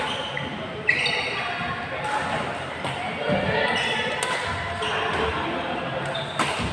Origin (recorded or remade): recorded